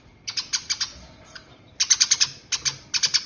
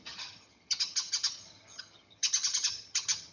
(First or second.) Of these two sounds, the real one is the first